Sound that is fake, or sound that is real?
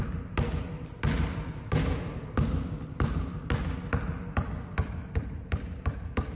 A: real